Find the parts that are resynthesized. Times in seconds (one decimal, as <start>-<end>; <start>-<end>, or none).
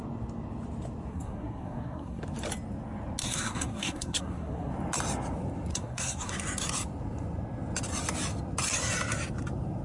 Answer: 1.1-2.2; 3.2-4.7; 5.7-6.3